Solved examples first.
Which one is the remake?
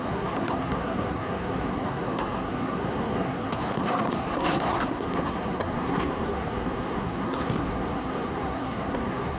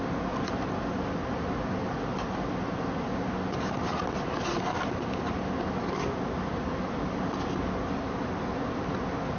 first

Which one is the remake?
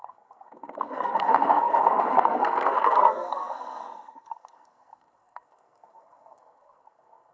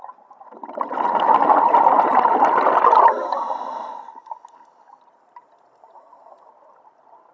first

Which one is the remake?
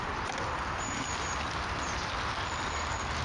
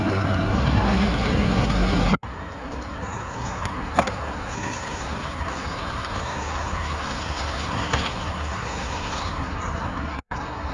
second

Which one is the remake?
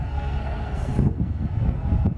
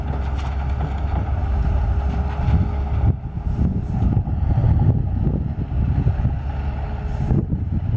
first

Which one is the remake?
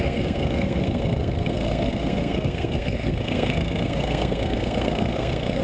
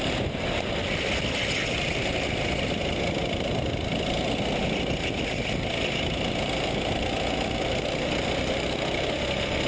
first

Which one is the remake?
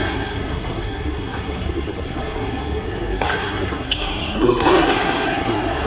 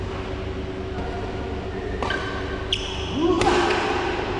first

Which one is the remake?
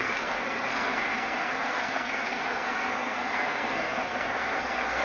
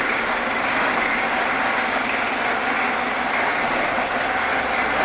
first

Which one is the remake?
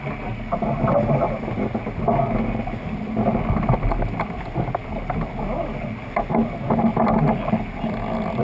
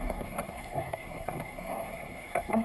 second